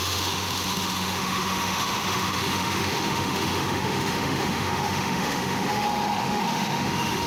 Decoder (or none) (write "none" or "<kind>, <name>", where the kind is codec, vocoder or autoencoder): autoencoder, DAC-VAE